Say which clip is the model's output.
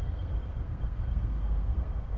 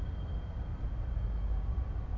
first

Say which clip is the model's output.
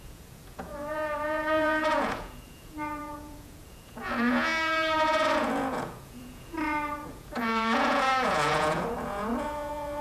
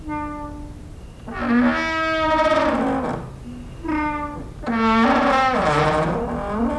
first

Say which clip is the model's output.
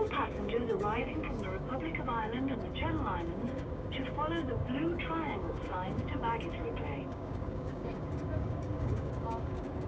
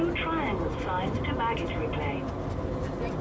first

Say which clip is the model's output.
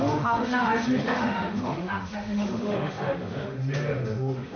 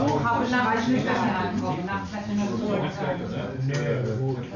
first